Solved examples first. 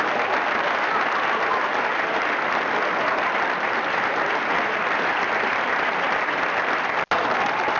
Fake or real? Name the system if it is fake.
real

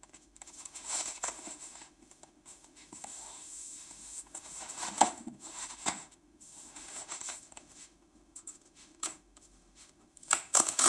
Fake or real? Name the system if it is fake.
fake, autoencoder, DAC-VAE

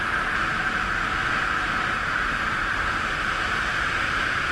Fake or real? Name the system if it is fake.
fake, vocoder, BigVGAN v2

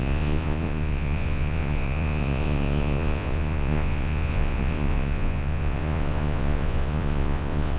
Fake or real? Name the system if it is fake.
fake, vocoder, Vocos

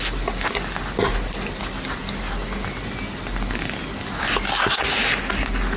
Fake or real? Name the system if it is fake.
real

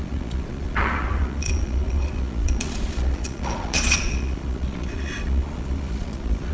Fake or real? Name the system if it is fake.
fake, vocoder, Vocos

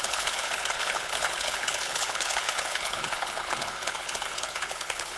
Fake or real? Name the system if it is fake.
fake, codec, HILCodec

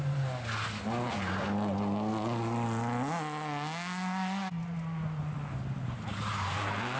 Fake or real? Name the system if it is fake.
real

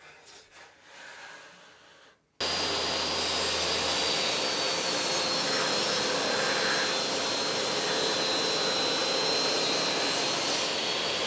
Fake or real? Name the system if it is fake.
real